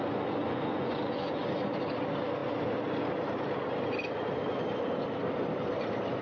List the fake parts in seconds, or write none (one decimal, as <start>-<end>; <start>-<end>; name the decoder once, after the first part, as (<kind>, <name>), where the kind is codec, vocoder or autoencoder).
0.4-1.4 (vocoder, Vocos)